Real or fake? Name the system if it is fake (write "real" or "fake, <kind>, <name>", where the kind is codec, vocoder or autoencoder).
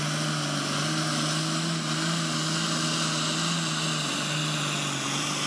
real